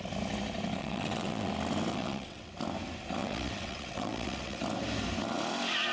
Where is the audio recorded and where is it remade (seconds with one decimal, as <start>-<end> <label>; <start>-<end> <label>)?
0.0-0.8 recorded; 0.8-1.5 remade; 1.5-1.9 recorded; 1.9-2.5 remade; 2.5-3.2 recorded; 3.2-4.6 remade; 4.6-5.9 recorded